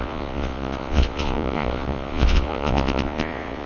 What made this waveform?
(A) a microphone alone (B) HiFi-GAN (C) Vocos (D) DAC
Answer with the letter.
C